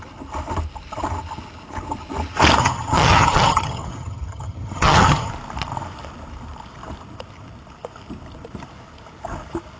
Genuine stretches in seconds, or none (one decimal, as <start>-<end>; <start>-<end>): 0.0-2.6; 5.3-9.8